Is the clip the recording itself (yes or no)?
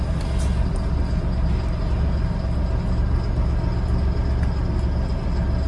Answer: yes